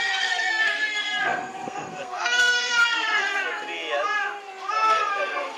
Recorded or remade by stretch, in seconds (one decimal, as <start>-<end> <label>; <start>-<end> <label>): 0.0-3.4 remade; 3.4-4.7 recorded; 4.7-5.6 remade